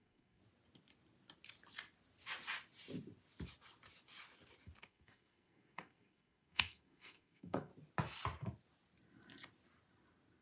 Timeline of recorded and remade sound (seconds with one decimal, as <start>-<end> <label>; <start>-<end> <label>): 0.0-0.4 remade; 0.4-4.8 recorded; 4.8-7.7 remade; 7.7-10.4 recorded